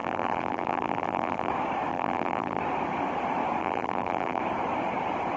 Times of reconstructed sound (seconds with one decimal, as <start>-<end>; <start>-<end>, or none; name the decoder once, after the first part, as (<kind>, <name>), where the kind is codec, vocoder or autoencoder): 0.0-1.5 (vocoder, BigVGAN v2); 1.9-2.6; 3.6-4.4